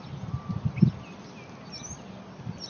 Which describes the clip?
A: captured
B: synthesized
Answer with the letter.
A